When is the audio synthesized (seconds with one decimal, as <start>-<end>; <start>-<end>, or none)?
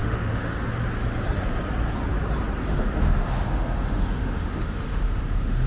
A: 0.0-0.6; 2.7-5.7